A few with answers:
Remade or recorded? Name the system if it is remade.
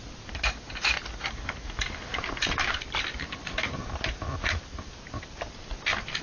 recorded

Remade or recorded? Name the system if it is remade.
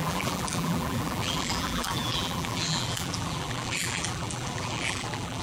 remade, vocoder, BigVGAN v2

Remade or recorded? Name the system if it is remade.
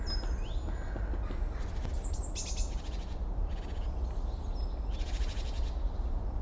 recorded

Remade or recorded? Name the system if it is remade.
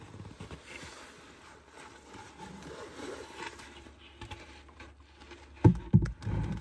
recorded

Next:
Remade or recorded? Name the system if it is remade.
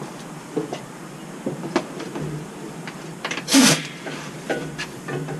remade, vocoder, BigVGAN v2